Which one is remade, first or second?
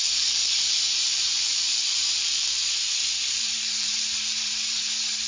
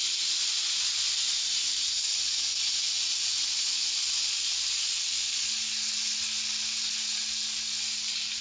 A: first